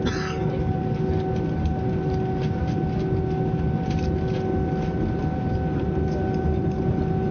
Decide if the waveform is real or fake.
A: real